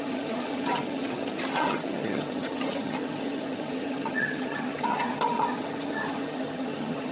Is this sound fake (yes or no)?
yes